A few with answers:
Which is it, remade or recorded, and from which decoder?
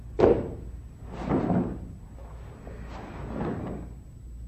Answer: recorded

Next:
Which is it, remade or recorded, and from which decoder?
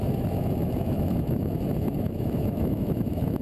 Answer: remade, autoencoder, DAC-VAE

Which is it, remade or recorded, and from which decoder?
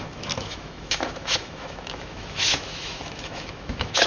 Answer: remade, autoencoder, DAC-VAE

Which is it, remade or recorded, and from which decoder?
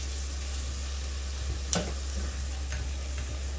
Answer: recorded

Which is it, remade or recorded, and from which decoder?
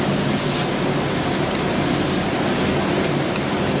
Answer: recorded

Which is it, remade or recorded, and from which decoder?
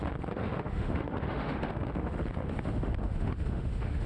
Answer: remade, autoencoder, DAC-VAE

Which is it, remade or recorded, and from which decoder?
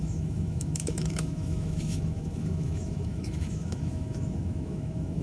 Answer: remade, autoencoder, DAC-VAE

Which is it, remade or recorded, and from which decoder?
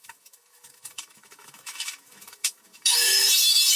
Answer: remade, autoencoder, DAC-VAE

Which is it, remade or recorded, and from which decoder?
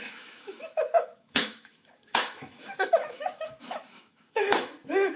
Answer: remade, autoencoder, DAC-VAE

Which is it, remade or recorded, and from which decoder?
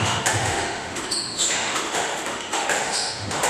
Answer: remade, autoencoder, DAC-VAE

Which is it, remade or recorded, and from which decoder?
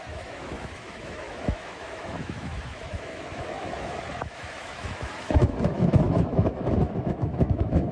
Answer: remade, autoencoder, DAC-VAE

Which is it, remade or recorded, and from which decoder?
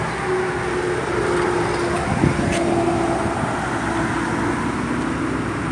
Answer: recorded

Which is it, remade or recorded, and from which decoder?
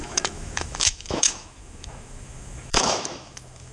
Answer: remade, autoencoder, DAC-VAE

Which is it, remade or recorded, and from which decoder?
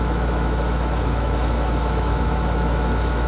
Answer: remade, autoencoder, DAC-VAE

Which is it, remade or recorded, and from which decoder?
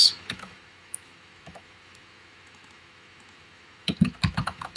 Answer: remade, autoencoder, DAC-VAE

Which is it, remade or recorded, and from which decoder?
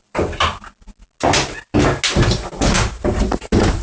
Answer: recorded